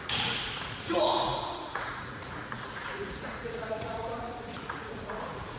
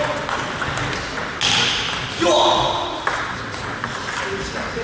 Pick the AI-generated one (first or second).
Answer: first